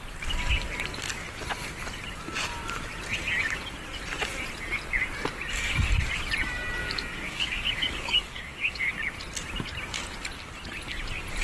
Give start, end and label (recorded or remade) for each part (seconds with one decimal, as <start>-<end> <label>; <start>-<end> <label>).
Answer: 0.0-6.8 recorded; 6.8-8.9 remade; 8.9-11.4 recorded